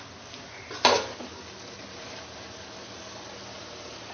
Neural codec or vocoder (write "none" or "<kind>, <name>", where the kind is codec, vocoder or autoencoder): none